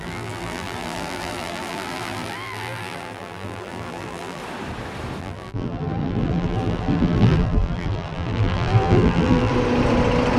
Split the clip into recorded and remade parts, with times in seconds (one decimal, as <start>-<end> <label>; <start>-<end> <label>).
0.0-4.4 remade; 4.4-5.2 recorded; 5.2-9.5 remade; 9.5-10.4 recorded

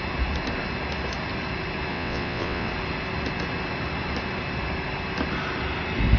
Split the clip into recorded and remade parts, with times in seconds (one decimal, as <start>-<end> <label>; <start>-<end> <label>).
0.0-1.9 recorded; 1.9-2.7 remade; 2.7-6.2 recorded

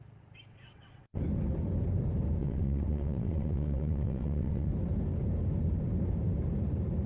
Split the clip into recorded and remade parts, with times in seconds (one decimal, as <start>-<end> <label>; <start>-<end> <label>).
0.0-0.5 recorded; 0.5-1.2 remade; 1.2-2.4 recorded; 2.4-4.7 remade; 4.7-7.1 recorded

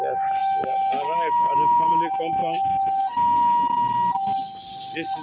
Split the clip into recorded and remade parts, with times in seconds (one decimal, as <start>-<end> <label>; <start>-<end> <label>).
0.0-5.2 recorded